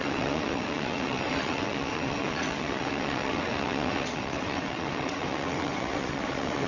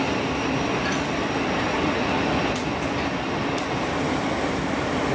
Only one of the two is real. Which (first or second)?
second